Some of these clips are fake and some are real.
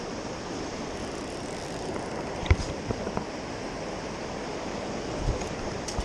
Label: fake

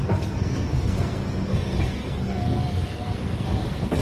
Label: fake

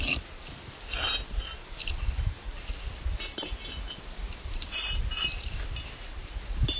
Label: real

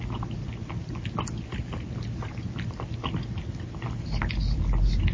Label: real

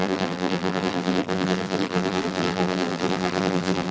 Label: fake